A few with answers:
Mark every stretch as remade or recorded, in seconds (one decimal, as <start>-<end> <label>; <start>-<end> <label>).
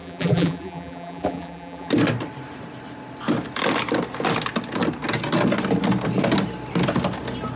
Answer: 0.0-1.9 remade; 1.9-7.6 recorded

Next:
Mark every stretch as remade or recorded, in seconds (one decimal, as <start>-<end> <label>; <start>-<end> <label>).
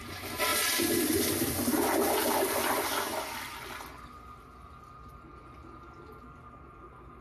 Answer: 0.0-7.2 recorded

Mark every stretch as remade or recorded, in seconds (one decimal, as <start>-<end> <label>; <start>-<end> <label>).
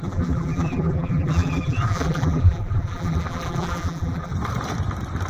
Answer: 0.0-4.3 remade; 4.3-5.3 recorded